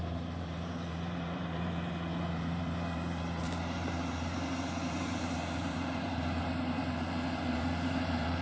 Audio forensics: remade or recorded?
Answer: remade